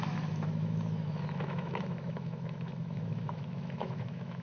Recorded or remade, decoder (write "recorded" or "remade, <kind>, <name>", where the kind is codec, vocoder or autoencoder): remade, autoencoder, DAC-VAE